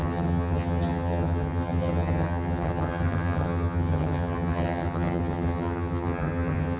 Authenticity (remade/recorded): remade